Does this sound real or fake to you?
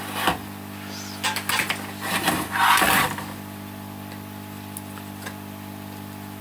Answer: real